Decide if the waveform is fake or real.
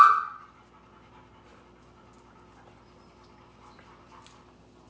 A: real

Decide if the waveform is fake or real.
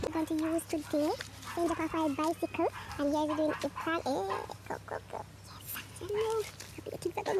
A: real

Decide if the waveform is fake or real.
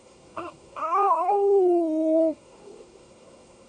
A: fake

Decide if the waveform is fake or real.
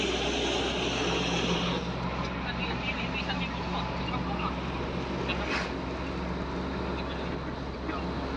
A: real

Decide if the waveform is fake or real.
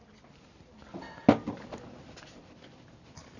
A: real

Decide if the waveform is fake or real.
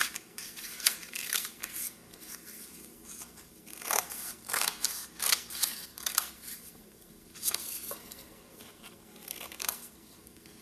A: fake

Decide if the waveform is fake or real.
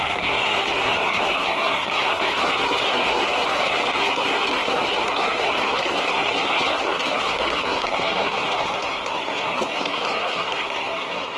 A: fake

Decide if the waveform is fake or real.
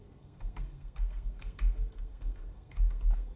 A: fake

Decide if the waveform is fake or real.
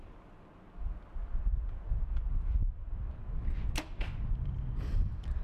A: real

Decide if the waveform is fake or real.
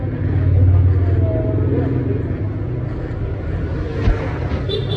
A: real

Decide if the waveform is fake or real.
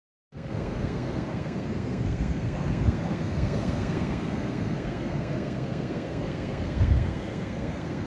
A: fake